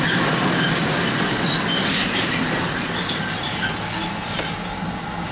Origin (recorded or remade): recorded